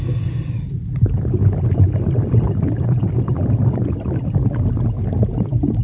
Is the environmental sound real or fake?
real